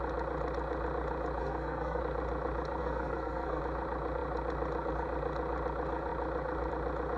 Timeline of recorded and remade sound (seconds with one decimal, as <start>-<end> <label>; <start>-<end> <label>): 0.0-1.4 recorded; 1.4-2.0 remade; 2.0-2.8 recorded; 2.8-3.6 remade; 3.6-7.2 recorded